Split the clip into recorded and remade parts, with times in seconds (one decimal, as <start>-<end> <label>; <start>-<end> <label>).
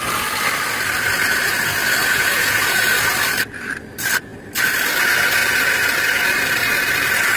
0.0-2.0 recorded; 2.0-2.8 remade; 2.8-7.4 recorded